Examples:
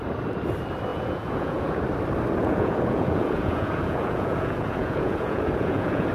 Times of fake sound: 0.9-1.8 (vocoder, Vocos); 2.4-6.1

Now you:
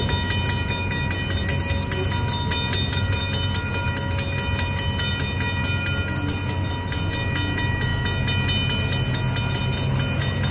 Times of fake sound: none